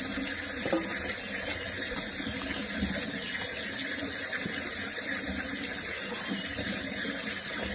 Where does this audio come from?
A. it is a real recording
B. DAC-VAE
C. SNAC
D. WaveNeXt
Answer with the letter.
A